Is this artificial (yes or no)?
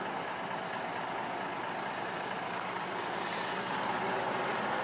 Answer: no